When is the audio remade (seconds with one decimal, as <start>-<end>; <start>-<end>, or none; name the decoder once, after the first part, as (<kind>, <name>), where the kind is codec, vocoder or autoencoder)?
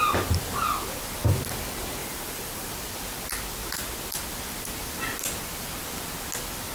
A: 2.0-2.7 (vocoder, BigVGAN v2)